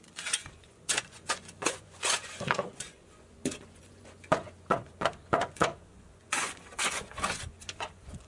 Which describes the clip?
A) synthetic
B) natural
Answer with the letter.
A